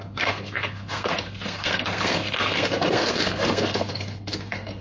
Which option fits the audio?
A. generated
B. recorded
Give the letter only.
A